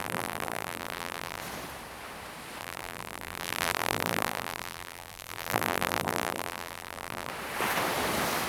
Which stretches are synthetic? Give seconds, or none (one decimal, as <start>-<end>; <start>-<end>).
0.0-1.4; 2.6-7.3